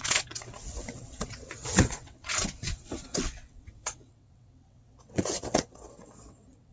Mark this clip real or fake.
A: fake